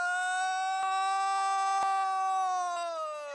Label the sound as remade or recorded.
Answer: recorded